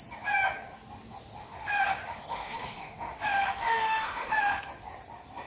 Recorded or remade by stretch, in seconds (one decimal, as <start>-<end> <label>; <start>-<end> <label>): 0.0-1.4 recorded; 1.4-4.6 remade; 4.6-5.5 recorded